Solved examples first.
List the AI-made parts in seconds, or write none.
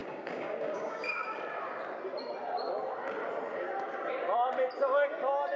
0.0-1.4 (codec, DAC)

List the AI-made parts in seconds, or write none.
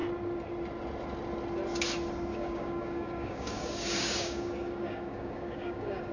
2.3-6.1 (codec, DAC)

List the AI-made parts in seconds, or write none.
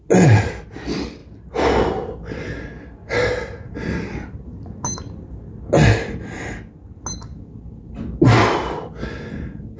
none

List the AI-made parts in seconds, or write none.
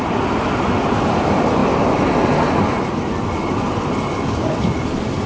none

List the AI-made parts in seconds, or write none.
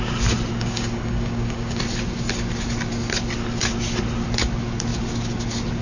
0.5-1.8 (codec, DAC)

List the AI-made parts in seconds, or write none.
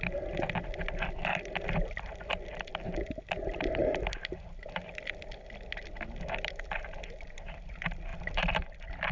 none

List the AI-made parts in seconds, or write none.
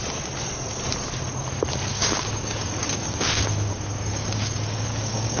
1.9-5.4 (codec, DAC)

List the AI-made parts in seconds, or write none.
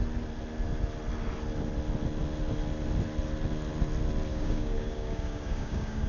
4.3-6.1 (codec, DAC)